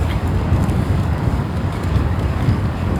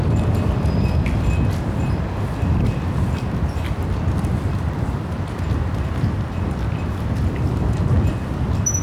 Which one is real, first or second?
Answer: second